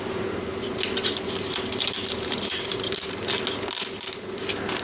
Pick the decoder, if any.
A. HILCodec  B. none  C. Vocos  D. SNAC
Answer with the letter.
B